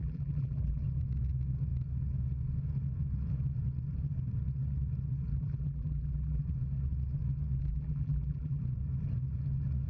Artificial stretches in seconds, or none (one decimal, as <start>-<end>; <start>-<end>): 0.0-0.8; 5.3-6.4; 7.6-8.6